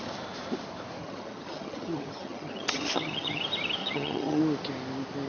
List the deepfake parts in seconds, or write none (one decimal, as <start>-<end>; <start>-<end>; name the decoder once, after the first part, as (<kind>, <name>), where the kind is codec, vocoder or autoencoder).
1.0-3.4 (vocoder, HiFi-GAN); 3.8-4.4